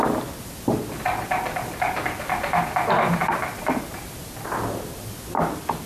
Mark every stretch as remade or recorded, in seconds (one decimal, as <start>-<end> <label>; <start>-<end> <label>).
0.0-5.9 recorded